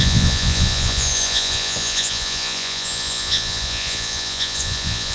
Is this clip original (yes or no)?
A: no